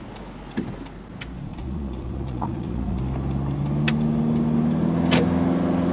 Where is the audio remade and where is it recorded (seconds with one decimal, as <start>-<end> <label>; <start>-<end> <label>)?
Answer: 0.0-1.5 recorded; 1.5-3.0 remade; 3.0-5.9 recorded